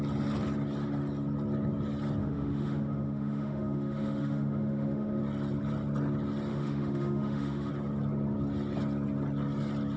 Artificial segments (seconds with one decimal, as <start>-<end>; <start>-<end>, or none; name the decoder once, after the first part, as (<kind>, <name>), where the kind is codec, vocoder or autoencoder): 2.2-5.2 (autoencoder, DAC-VAE); 6.5-7.7